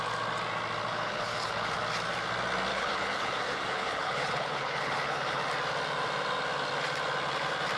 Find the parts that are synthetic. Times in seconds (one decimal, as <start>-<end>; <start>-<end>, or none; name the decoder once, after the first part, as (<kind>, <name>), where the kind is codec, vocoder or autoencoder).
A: 0.9-1.8 (codec, HILCodec); 2.7-5.4